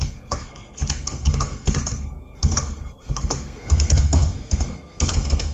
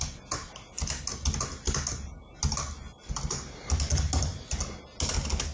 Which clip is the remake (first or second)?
first